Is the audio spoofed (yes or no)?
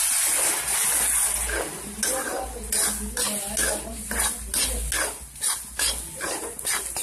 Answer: no